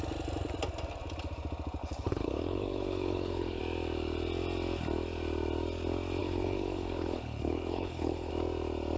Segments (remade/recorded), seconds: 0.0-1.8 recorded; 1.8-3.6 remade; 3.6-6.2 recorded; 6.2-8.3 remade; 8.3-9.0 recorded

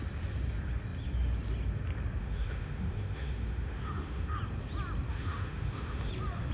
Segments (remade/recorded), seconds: 0.0-2.2 recorded; 2.2-4.4 remade; 4.4-5.1 recorded; 5.1-6.1 remade; 6.1-6.5 recorded

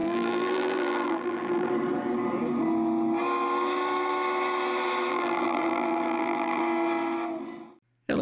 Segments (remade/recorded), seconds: 0.0-1.7 remade; 1.7-5.1 recorded; 5.1-6.6 remade; 6.6-8.2 recorded